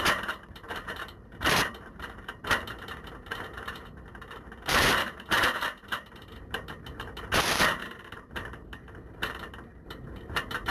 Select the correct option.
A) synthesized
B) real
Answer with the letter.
A